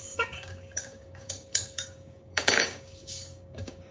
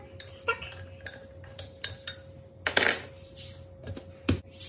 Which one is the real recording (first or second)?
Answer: second